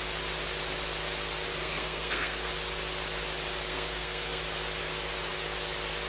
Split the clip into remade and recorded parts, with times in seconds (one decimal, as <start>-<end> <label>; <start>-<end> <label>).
0.0-1.6 recorded; 1.6-2.5 remade; 2.5-3.7 recorded; 3.7-4.4 remade; 4.4-6.1 recorded